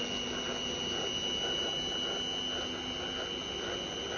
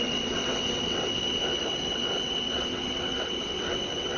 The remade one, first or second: second